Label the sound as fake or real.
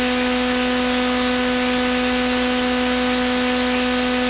real